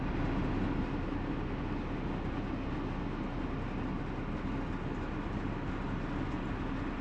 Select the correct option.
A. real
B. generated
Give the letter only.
A